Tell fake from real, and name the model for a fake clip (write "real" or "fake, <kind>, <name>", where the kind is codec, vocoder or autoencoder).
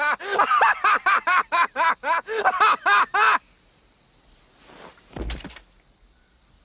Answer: real